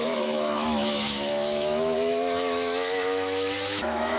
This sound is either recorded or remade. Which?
remade